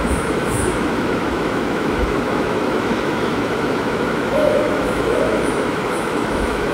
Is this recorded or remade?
remade